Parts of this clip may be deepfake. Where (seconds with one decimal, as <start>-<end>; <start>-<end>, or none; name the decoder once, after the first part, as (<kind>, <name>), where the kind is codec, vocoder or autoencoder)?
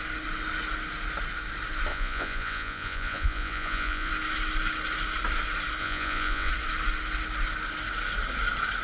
1.9-4.1 (vocoder, Vocos); 5.8-6.5